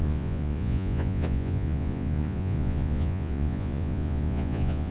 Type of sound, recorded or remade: remade